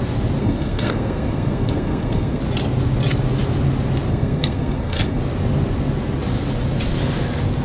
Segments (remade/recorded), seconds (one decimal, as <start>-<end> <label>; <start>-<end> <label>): 0.0-0.4 recorded; 0.4-2.4 remade; 2.4-4.1 recorded; 4.1-5.2 remade; 5.2-7.6 recorded